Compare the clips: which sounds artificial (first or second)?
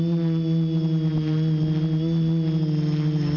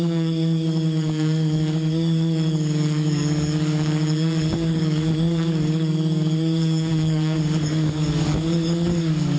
second